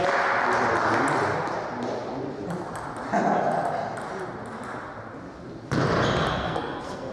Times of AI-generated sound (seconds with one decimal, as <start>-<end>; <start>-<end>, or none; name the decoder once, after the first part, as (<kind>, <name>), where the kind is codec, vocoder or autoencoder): 6.3-7.1 (codec, SNAC)